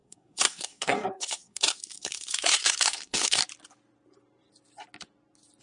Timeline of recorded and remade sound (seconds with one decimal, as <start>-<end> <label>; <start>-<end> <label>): 0.0-3.4 remade; 3.4-5.6 recorded